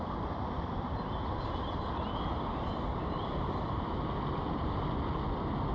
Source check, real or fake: real